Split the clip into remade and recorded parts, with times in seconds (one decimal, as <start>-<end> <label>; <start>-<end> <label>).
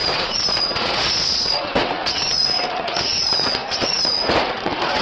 0.0-5.0 remade